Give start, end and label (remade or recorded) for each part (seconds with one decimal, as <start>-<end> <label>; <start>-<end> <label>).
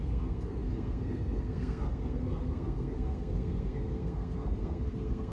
0.0-5.3 remade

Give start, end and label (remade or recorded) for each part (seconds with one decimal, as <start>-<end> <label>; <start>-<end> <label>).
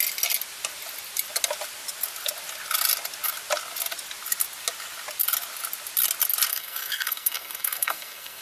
0.0-6.5 recorded; 6.5-8.4 remade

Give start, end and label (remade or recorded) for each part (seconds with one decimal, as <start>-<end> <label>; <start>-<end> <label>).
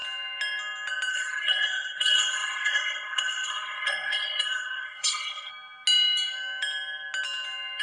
0.0-1.1 recorded; 1.1-5.5 remade; 5.5-7.8 recorded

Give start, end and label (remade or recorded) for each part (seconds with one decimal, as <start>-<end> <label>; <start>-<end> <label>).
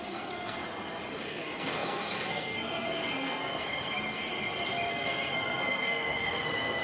0.0-0.6 remade; 0.6-1.2 recorded; 1.2-4.3 remade; 4.3-4.9 recorded; 4.9-6.8 remade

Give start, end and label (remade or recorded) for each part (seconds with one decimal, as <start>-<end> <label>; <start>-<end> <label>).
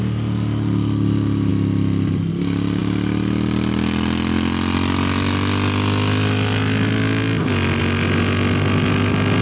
0.0-9.4 recorded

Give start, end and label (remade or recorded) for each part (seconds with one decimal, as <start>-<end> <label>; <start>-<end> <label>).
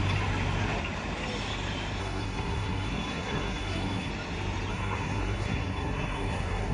0.0-2.0 recorded; 2.0-4.1 remade; 4.1-4.7 recorded; 4.7-6.7 remade